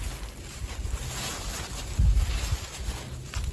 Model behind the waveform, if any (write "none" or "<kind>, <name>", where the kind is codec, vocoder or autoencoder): none